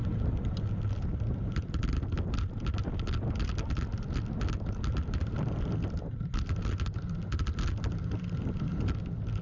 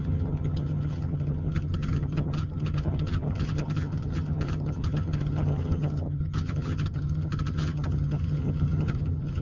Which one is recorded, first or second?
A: first